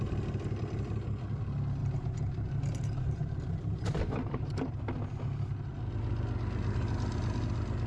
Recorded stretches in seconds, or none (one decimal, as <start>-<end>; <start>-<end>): 0.0-1.8; 4.8-7.9